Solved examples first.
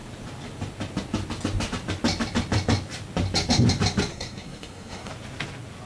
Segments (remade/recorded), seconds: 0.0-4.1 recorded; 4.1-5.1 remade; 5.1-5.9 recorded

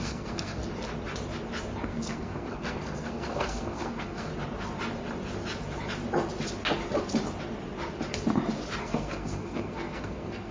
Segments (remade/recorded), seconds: 0.0-0.6 remade; 0.6-1.8 recorded; 1.8-4.3 remade; 4.3-8.8 recorded; 8.8-10.5 remade

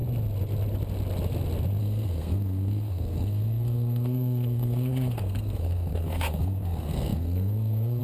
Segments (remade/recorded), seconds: 0.0-1.8 recorded; 1.8-8.0 remade

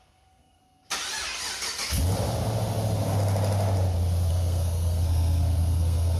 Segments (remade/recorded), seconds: 0.0-0.6 remade; 0.6-4.3 recorded; 4.3-6.2 remade

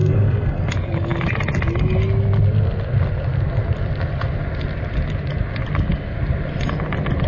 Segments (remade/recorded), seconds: 0.0-0.7 remade; 0.7-7.3 recorded

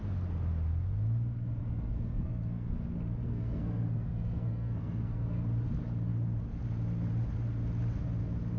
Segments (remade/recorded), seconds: 0.0-1.6 recorded; 1.6-2.7 remade; 2.7-3.2 recorded; 3.2-5.4 remade; 5.4-8.6 recorded

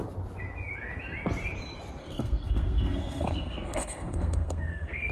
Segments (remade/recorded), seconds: 0.0-2.0 recorded; 2.0-5.1 remade

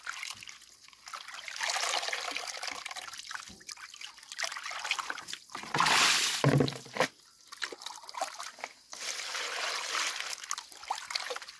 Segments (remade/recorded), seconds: 0.0-11.6 recorded